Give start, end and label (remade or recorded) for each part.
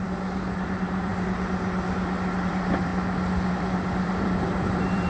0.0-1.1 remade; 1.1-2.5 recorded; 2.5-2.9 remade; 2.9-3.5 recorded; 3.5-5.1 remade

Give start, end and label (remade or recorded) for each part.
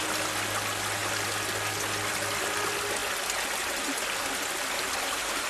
0.0-5.5 recorded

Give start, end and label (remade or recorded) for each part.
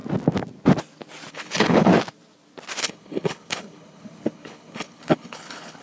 0.0-1.3 recorded; 1.3-1.9 remade; 1.9-2.8 recorded; 2.8-5.8 remade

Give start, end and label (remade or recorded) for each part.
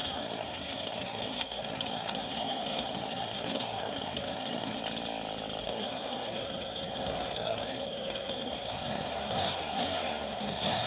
0.0-4.8 remade; 4.8-5.6 recorded; 5.6-10.9 remade